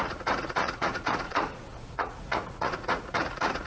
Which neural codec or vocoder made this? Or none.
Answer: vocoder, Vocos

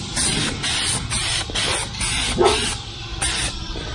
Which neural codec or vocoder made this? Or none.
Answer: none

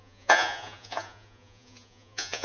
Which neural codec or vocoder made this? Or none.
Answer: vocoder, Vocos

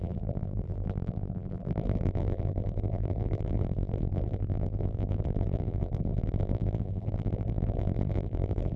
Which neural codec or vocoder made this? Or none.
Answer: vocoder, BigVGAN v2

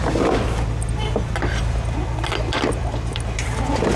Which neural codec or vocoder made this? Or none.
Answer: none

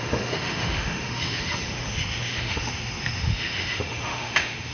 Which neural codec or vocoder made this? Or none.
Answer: autoencoder, DAC-VAE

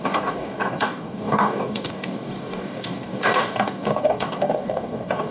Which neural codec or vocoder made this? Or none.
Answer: codec, DAC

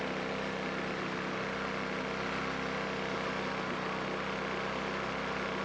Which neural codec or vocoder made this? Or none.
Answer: none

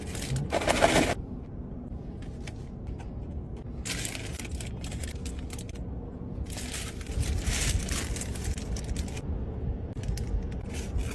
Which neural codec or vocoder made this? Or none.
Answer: none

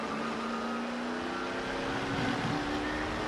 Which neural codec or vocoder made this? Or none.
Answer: none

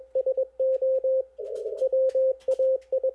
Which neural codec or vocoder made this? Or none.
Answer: none